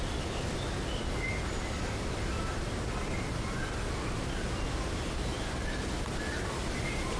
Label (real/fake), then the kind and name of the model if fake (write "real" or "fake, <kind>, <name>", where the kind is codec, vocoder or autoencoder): real